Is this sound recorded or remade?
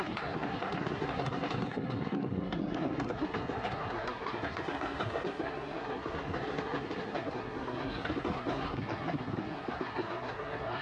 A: remade